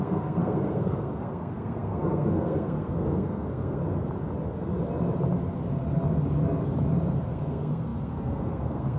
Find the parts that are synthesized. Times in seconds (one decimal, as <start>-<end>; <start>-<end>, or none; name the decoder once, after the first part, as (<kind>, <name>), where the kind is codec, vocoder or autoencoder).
0.0-3.8 (codec, SNAC); 7.2-9.0